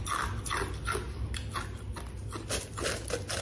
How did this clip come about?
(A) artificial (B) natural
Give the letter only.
B